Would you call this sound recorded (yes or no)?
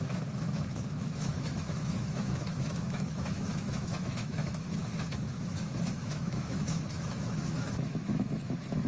no